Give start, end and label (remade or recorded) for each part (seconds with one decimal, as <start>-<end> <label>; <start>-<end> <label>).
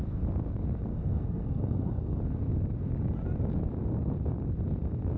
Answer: 0.0-0.9 recorded; 0.9-2.2 remade; 2.2-5.2 recorded